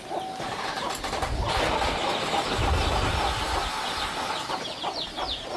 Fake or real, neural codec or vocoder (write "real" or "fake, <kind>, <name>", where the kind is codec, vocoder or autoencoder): real